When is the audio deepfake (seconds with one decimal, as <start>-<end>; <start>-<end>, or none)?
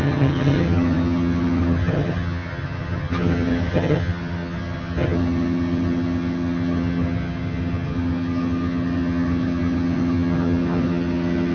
0.0-11.5